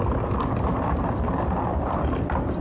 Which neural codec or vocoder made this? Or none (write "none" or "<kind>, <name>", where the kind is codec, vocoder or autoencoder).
none